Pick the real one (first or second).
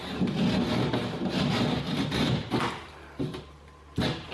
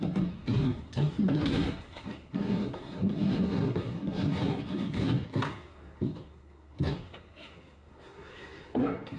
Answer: first